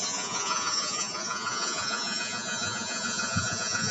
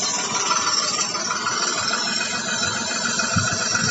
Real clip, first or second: second